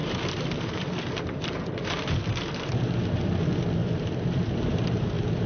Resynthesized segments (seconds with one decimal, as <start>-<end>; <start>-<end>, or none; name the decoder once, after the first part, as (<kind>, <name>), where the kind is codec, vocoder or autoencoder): 0.0-3.3 (vocoder, BigVGAN v2); 3.8-5.5

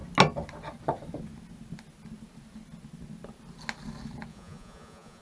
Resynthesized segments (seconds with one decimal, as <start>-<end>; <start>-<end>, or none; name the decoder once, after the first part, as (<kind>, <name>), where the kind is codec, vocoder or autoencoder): 4.3-5.2 (vocoder, Vocos)

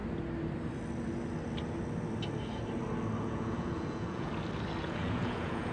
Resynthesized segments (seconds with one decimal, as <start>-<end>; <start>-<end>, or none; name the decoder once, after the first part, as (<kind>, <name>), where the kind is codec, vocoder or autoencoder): 3.2-4.3 (vocoder, Vocos); 4.8-5.7

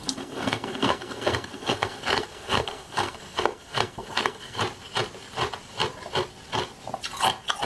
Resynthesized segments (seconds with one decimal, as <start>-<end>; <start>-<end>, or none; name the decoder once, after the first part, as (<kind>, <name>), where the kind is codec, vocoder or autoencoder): 0.0-4.6 (codec, SNAC)

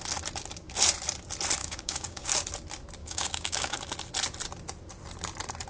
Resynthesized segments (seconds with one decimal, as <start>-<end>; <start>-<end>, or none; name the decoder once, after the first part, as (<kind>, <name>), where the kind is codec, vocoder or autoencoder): 1.6-2.3 (codec, DAC); 3.0-3.8

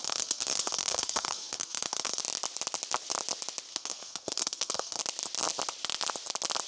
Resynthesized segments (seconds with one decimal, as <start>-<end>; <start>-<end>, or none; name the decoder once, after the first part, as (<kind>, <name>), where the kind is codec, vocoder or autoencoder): 0.0-2.2 (codec, SNAC); 3.7-5.0

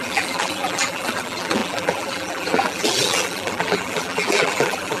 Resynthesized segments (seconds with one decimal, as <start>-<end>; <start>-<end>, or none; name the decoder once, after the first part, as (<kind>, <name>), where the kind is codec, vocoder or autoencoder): 0.0-5.0 (vocoder, BigVGAN v2)